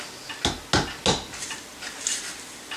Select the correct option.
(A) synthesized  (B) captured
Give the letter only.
B